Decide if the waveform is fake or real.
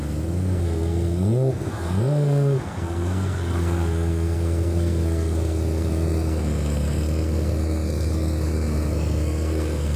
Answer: fake